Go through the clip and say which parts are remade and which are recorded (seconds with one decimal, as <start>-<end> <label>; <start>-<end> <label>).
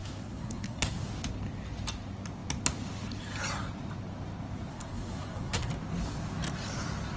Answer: 0.0-1.1 remade; 1.1-4.7 recorded; 4.7-5.7 remade; 5.7-7.2 recorded